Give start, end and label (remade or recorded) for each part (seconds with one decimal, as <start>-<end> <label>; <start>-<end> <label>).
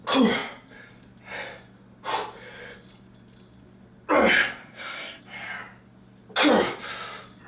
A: 0.0-4.6 recorded; 4.6-5.2 remade; 5.2-7.5 recorded